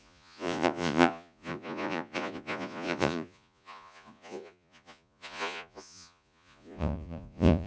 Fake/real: fake